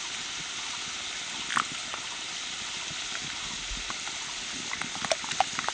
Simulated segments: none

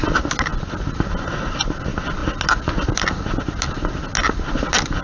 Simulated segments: none

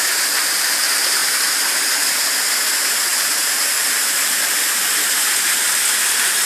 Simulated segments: 1.2-1.8 (vocoder, BigVGAN v2); 3.1-5.3